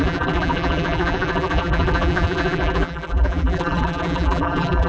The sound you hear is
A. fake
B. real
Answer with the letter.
A